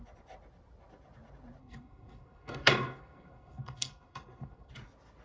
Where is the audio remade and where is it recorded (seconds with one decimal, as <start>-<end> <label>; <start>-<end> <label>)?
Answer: 0.0-1.6 recorded; 1.6-4.7 remade; 4.7-5.2 recorded